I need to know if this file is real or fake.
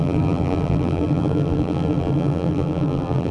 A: fake